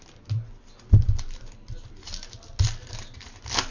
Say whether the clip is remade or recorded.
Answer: recorded